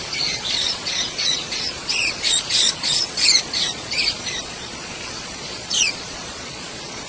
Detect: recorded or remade remade